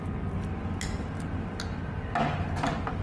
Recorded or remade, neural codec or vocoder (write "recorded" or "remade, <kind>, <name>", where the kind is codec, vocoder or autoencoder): recorded